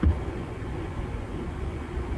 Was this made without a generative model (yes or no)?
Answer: no